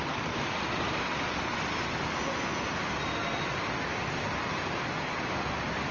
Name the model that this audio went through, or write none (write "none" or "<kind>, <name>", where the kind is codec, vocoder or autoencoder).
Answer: none